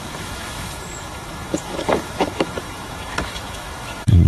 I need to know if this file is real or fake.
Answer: fake